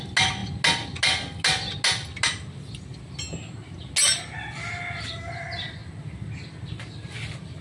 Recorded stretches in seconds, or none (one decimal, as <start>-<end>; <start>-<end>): 0.0-7.6